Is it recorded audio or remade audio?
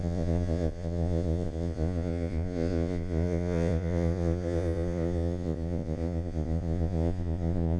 remade